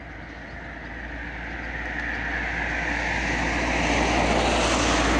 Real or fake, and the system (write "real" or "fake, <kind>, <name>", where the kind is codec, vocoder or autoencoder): real